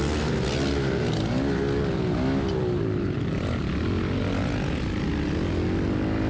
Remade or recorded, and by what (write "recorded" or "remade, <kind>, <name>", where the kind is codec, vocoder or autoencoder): recorded